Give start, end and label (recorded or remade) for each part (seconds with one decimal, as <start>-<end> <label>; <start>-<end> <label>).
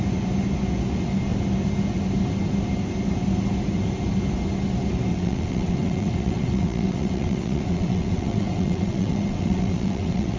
0.0-5.1 recorded; 5.1-10.4 remade